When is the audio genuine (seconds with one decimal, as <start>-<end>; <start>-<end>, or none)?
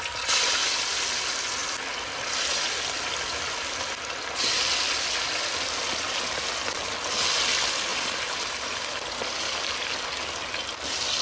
0.0-7.9; 9.2-11.2